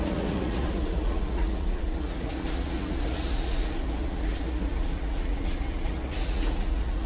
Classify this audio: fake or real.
fake